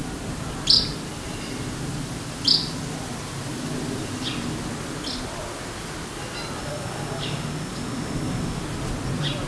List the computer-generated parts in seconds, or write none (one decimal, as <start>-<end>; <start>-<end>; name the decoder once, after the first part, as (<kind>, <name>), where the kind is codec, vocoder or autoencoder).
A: 6.6-8.6 (codec, DAC)